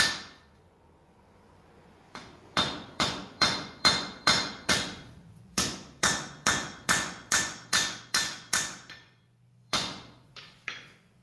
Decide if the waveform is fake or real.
fake